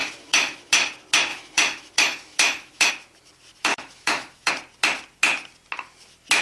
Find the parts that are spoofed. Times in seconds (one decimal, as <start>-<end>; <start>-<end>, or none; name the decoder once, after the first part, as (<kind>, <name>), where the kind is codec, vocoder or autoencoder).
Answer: 0.0-0.7 (autoencoder, DAC-VAE); 1.3-2.9; 3.7-4.5